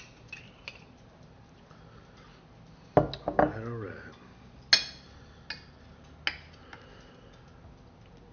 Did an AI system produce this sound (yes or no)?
no